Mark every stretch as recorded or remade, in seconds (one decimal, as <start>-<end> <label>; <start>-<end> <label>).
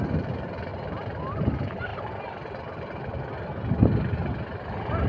0.0-0.7 recorded; 0.7-1.2 remade; 1.2-1.9 recorded; 1.9-3.2 remade; 3.2-5.1 recorded